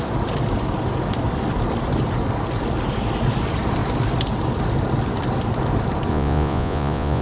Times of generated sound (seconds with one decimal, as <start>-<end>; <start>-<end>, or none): 6.1-7.2